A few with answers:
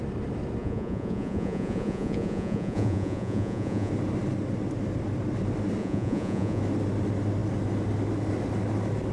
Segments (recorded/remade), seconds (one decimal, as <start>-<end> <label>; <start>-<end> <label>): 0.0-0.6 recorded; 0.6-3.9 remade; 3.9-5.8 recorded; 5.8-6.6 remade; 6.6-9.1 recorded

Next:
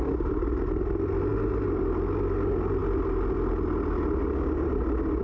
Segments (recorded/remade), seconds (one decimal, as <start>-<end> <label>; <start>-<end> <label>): 0.0-5.2 recorded

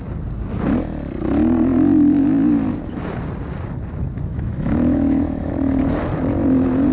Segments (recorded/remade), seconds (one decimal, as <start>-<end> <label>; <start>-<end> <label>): 0.0-4.3 recorded; 4.3-5.5 remade; 5.5-6.9 recorded

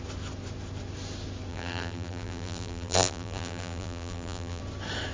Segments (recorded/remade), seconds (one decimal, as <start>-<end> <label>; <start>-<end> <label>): 0.0-1.5 recorded; 1.5-4.6 remade; 4.6-5.1 recorded

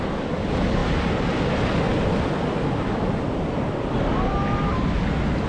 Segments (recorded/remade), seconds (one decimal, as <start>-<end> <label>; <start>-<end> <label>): 0.0-5.5 recorded

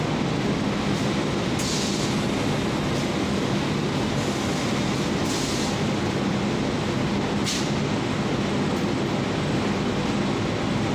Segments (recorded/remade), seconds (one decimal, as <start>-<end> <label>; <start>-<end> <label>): 0.0-10.9 recorded

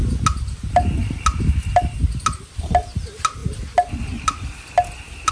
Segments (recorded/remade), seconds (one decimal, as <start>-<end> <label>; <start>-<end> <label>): 0.0-5.3 recorded

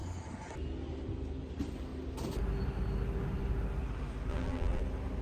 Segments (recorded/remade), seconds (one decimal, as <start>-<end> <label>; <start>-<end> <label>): 0.0-4.3 recorded; 4.3-4.8 remade; 4.8-5.2 recorded